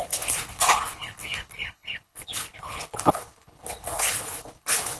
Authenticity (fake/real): fake